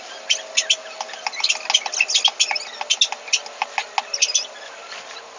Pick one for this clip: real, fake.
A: real